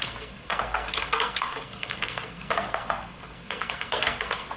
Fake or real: fake